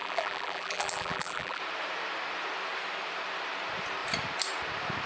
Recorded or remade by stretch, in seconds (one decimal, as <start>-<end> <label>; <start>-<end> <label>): 0.0-1.6 remade; 1.6-5.1 recorded

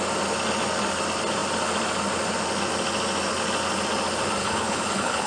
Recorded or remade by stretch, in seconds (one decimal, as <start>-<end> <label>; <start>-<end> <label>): 0.0-4.4 recorded; 4.4-5.3 remade

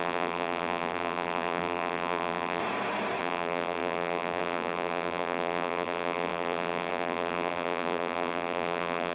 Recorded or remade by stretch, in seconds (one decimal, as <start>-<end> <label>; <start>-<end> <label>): 0.0-2.6 remade; 2.6-3.2 recorded; 3.2-9.1 remade

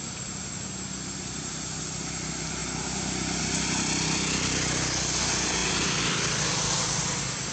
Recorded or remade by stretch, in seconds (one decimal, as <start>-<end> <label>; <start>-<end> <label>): 0.0-7.5 recorded

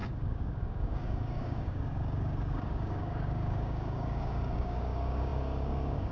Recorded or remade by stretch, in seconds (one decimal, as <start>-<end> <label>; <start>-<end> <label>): 0.0-6.1 remade